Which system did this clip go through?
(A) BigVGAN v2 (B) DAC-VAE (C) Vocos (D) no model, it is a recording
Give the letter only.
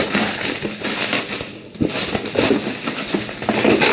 D